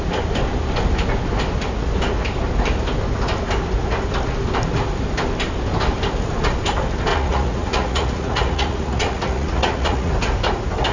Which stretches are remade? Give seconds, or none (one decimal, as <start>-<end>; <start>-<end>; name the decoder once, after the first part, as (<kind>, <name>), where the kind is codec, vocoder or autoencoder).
7.1-10.1 (vocoder, Vocos)